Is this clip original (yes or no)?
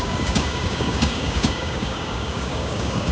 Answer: no